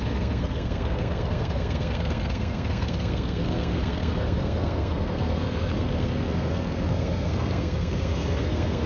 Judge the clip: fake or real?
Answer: fake